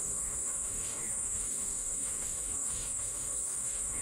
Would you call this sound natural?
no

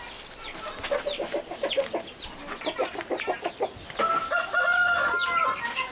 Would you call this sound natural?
yes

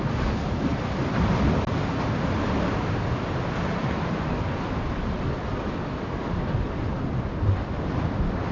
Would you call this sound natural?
yes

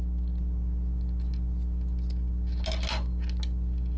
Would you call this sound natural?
yes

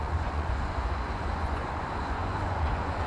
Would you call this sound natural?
no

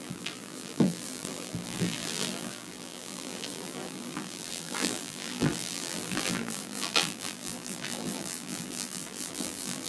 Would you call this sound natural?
no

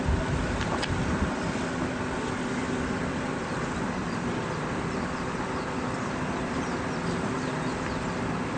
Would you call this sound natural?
yes